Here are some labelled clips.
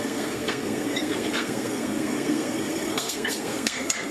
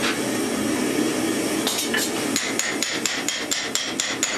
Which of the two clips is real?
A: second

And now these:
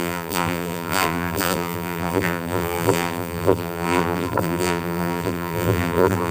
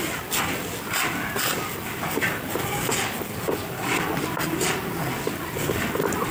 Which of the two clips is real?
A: second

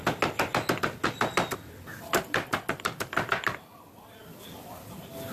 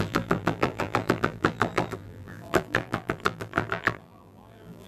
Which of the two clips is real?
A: first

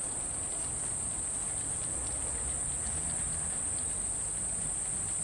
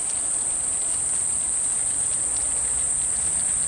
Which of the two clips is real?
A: first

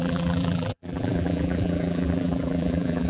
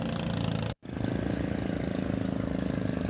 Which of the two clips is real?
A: second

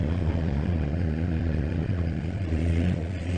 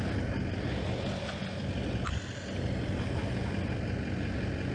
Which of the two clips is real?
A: second